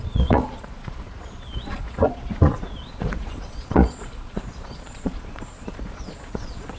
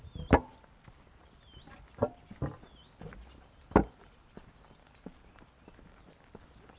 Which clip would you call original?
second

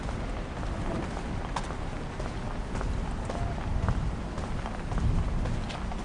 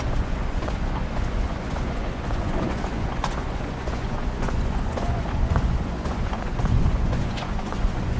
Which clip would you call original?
first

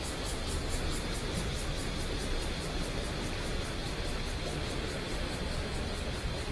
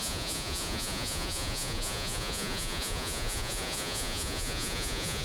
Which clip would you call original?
first